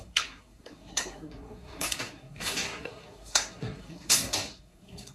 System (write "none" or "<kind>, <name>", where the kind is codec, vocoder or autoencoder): codec, SNAC